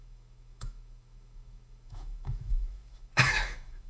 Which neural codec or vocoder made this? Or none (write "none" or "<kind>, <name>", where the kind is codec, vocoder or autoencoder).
autoencoder, DAC-VAE